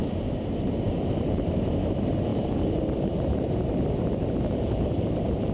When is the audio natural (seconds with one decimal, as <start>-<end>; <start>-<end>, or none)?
0.0-0.9